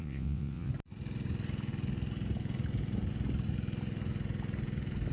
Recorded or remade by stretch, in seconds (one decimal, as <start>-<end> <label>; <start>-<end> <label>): 0.0-0.7 remade; 0.7-5.1 recorded